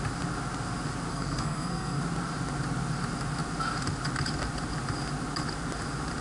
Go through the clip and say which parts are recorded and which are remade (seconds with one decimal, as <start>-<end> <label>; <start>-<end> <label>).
0.0-1.1 recorded; 1.1-2.0 remade; 2.0-6.2 recorded

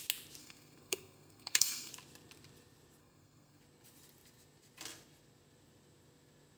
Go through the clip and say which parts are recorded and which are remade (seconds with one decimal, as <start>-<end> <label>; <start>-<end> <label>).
0.0-0.4 recorded; 0.4-1.9 remade; 1.9-3.0 recorded; 3.0-3.6 remade; 3.6-6.6 recorded

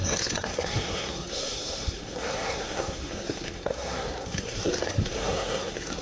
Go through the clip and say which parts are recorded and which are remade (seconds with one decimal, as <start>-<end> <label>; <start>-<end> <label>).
0.0-6.0 remade

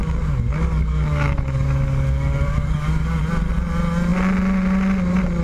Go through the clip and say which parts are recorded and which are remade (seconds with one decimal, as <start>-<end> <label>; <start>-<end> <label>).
0.0-3.2 remade; 3.2-5.4 recorded

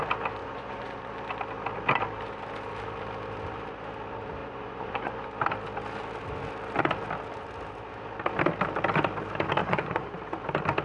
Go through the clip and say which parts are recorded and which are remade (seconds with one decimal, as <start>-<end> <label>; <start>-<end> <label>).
0.0-0.4 recorded; 0.4-1.1 remade; 1.1-4.4 recorded; 4.4-5.3 remade; 5.3-9.6 recorded; 9.6-10.2 remade; 10.2-10.8 recorded

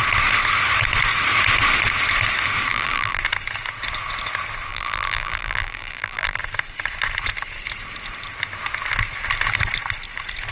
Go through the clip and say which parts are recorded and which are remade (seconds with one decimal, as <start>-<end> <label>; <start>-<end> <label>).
0.0-2.7 recorded; 2.7-3.2 remade; 3.2-4.7 recorded; 4.7-6.4 remade; 6.4-10.5 recorded

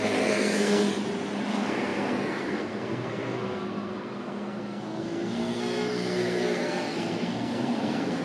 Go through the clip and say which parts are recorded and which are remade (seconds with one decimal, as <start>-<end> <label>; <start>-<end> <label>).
0.0-0.9 remade; 0.9-1.5 recorded; 1.5-8.2 remade

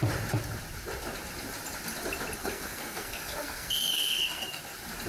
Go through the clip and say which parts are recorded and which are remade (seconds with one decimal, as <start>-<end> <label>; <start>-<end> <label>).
0.0-2.4 recorded; 2.4-4.6 remade; 4.6-5.1 recorded